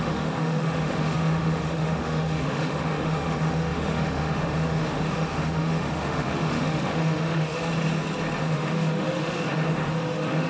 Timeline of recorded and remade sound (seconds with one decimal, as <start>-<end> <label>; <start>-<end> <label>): 0.0-7.7 remade; 7.7-8.4 recorded; 8.4-10.5 remade